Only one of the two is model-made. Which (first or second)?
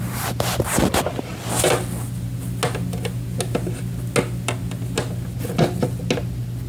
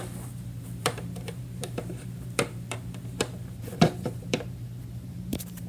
second